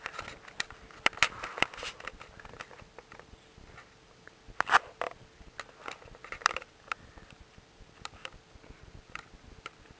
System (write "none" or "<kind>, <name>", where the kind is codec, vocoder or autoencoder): none